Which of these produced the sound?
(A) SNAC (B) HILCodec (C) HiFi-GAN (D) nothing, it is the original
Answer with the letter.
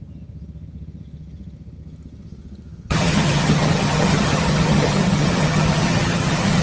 C